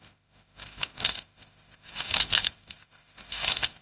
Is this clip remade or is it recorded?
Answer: remade